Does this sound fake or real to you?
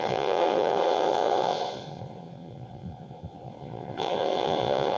fake